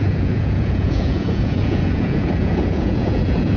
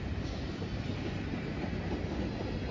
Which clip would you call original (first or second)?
second